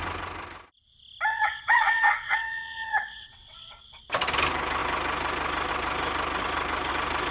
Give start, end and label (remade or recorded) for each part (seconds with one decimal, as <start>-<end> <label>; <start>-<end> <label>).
0.0-1.3 recorded; 1.3-3.8 remade; 3.8-7.3 recorded